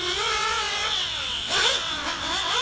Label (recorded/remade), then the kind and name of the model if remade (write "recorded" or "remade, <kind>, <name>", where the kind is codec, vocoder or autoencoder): remade, vocoder, WaveNeXt